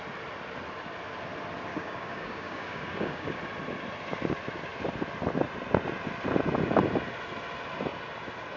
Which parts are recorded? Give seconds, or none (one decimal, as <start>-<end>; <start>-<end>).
0.0-1.7; 3.4-8.6